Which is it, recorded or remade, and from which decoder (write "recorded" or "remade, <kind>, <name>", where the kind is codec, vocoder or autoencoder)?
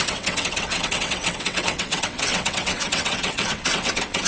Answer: remade, vocoder, WaveNeXt